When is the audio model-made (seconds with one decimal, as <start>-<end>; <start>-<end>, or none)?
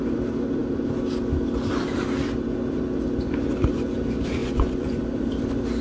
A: 4.4-5.0